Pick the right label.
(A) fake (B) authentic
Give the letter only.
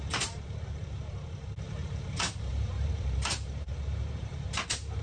A